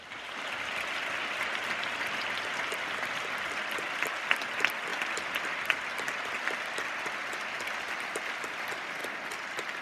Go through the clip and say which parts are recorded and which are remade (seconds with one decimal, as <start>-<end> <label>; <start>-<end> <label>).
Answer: 0.0-4.9 recorded; 4.9-6.3 remade; 6.3-9.0 recorded; 9.0-9.8 remade